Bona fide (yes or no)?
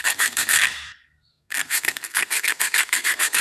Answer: no